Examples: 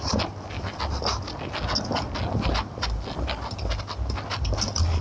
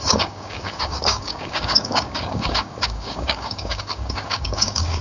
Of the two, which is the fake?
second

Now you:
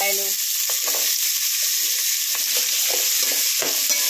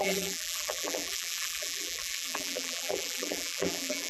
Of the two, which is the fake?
second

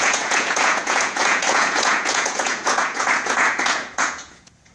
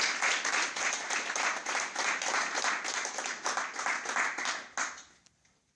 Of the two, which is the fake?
first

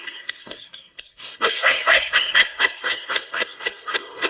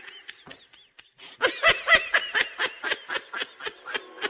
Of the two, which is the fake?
first